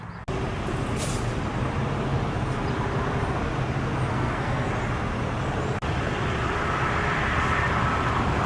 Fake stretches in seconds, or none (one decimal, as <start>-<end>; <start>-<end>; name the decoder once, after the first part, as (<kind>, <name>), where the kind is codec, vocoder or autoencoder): 4.1-4.7 (codec, SNAC)